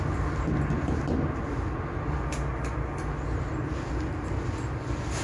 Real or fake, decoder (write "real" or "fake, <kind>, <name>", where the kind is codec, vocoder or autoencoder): real